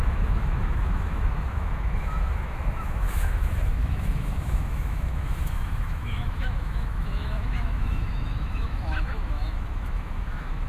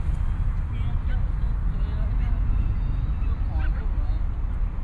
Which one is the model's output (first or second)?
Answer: first